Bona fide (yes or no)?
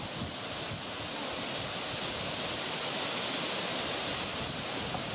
yes